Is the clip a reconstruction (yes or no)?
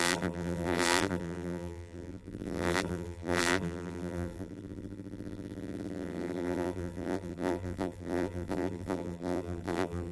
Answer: yes